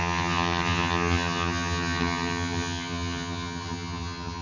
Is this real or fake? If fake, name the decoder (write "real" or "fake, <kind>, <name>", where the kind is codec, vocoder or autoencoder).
fake, vocoder, HiFi-GAN